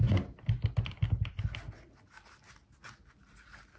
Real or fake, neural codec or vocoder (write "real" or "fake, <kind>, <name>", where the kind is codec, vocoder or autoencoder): real